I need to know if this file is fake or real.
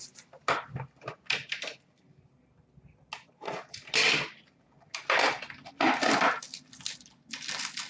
real